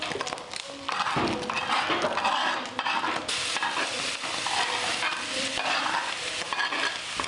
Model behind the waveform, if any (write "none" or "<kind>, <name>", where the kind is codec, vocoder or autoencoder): none